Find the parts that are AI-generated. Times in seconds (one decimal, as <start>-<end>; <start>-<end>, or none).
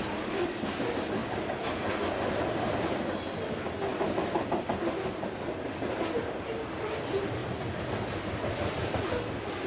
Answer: none